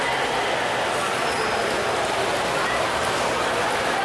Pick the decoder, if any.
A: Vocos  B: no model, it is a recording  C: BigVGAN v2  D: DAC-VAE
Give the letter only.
B